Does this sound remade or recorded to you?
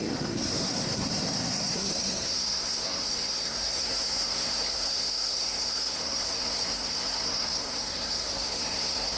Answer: remade